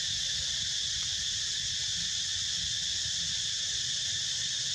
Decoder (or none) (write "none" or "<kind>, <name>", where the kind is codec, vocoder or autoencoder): none